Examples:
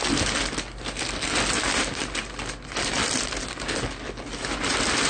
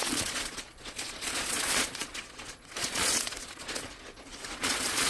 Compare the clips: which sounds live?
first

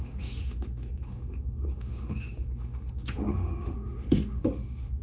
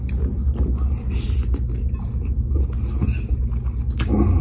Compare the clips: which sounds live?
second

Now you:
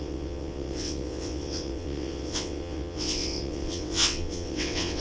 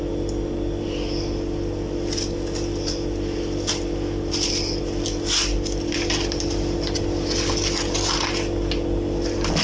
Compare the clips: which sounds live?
second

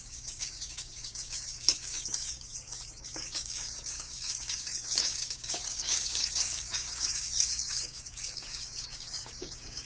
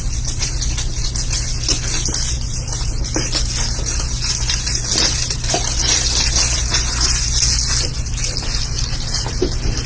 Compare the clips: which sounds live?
second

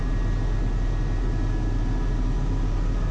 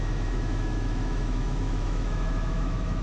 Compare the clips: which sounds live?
first